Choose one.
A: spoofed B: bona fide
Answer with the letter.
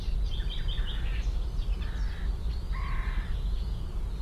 B